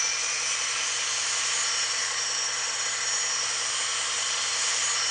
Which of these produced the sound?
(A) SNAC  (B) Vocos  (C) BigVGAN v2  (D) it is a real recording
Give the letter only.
D